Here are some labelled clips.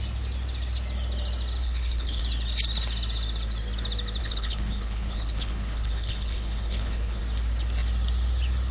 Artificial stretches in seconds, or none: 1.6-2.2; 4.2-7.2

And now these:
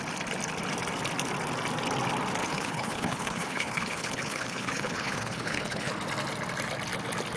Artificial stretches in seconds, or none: 2.4-5.9

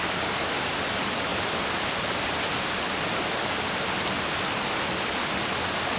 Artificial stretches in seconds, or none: none

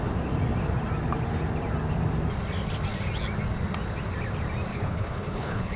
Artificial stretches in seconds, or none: 4.7-5.8

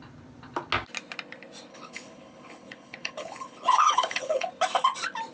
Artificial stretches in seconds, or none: 1.7-4.5

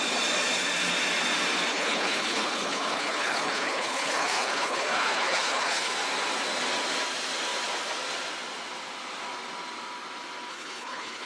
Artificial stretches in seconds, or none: 1.7-5.9; 10.5-11.3